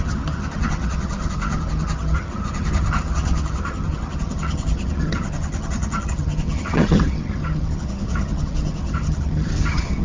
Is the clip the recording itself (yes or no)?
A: no